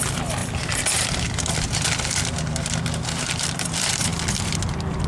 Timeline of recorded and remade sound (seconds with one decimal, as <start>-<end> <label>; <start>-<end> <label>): 0.0-4.1 remade; 4.1-5.1 recorded